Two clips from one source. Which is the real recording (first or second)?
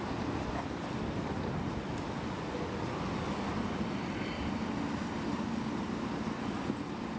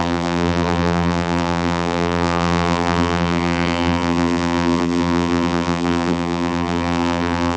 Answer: first